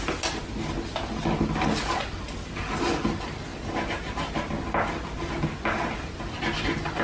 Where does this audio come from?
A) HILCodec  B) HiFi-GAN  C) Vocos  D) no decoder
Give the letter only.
D